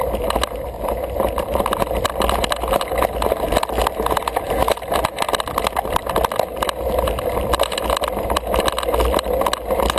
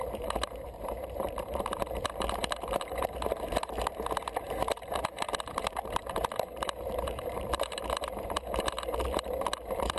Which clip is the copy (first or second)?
second